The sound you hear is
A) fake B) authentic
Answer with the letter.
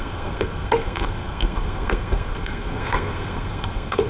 A